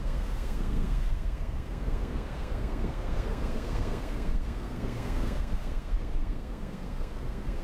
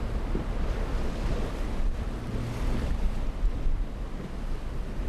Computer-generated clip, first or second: first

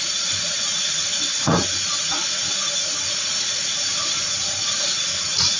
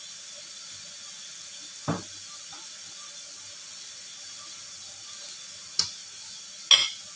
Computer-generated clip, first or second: first